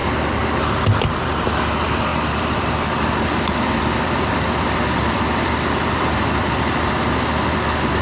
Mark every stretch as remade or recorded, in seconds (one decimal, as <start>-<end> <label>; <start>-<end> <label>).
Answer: 0.0-0.7 recorded; 0.7-8.0 remade